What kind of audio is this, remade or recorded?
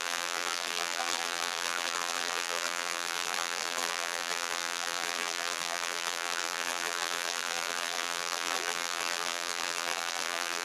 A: remade